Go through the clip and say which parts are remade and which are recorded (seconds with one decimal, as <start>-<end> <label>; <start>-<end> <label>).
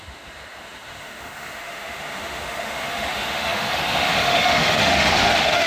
0.0-5.7 remade